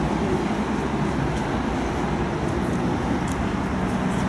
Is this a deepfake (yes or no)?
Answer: no